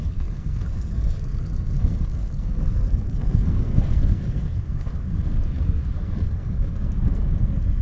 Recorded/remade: remade